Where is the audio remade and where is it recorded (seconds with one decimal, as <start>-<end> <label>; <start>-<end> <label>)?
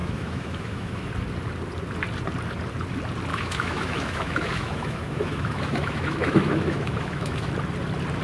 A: 0.0-1.1 remade; 1.1-3.3 recorded; 3.3-7.5 remade; 7.5-8.2 recorded